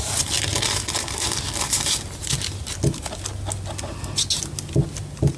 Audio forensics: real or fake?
real